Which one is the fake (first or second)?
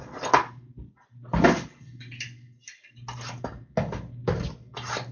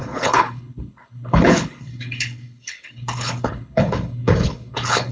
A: second